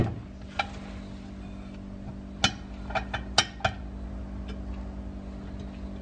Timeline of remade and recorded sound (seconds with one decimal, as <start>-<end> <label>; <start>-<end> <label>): 0.0-6.0 recorded